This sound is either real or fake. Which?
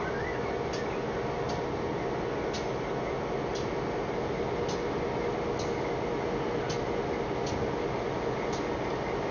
real